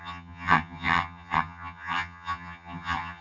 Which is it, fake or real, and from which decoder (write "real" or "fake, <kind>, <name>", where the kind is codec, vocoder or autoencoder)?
fake, vocoder, HiFi-GAN